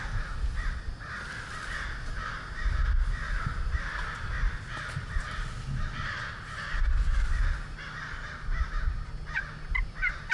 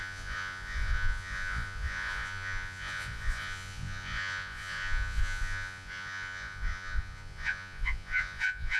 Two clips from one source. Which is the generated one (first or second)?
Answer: second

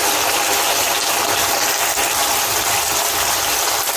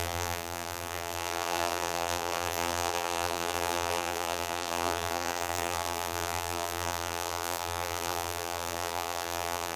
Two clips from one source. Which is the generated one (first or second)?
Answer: second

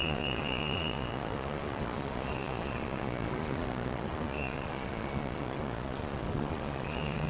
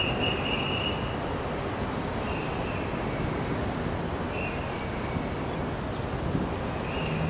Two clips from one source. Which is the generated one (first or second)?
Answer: first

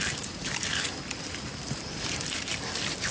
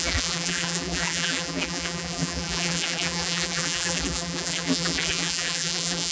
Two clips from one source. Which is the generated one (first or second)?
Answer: second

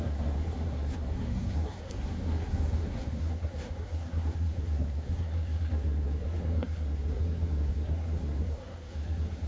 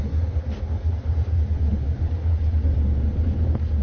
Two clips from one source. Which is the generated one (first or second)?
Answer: first